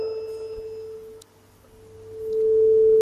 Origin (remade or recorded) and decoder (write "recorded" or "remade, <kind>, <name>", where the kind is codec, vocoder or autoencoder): recorded